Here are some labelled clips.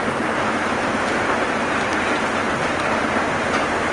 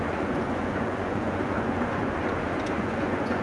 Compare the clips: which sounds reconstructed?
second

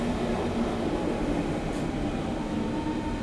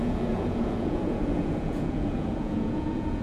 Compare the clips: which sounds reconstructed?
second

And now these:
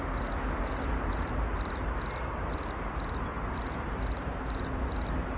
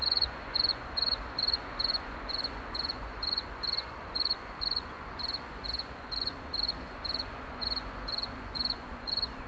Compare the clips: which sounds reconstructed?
second